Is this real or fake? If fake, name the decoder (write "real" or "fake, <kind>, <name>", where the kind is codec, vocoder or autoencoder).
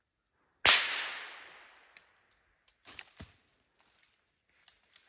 real